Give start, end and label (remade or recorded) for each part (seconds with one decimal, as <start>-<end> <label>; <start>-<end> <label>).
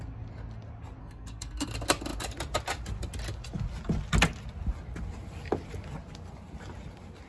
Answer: 0.0-1.0 recorded; 1.0-1.7 remade; 1.7-7.3 recorded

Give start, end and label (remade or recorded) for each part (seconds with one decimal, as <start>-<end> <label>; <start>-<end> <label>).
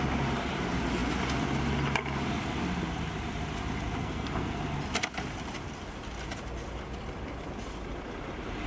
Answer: 0.0-4.0 recorded; 4.0-4.6 remade; 4.6-8.7 recorded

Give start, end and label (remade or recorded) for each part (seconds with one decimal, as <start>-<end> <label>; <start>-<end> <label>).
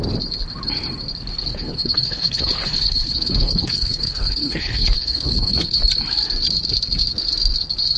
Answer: 0.0-1.5 recorded; 1.5-5.8 remade; 5.8-8.0 recorded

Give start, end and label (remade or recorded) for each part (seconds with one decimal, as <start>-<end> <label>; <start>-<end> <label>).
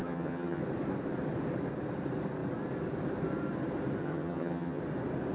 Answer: 0.0-0.6 remade; 0.6-4.0 recorded; 4.0-4.8 remade; 4.8-5.3 recorded